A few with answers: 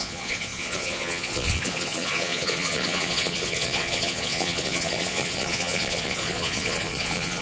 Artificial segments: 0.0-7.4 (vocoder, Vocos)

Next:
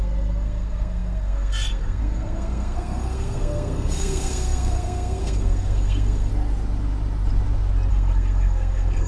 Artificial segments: 0.0-6.3 (codec, SNAC); 7.9-9.1